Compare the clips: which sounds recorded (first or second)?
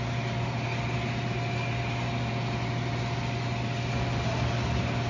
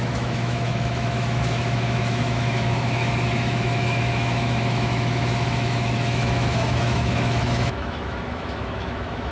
first